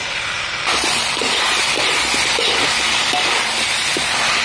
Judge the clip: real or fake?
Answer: real